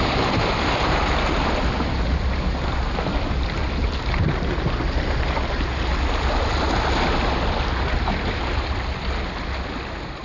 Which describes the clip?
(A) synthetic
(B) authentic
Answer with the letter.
B